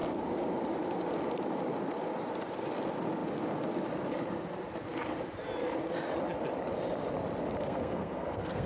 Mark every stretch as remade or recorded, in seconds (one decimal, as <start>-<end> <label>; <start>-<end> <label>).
0.0-7.6 recorded; 7.6-8.7 remade